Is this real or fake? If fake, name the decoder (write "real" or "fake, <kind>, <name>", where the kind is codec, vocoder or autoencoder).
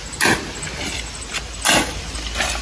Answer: real